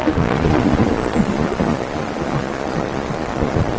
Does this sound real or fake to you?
fake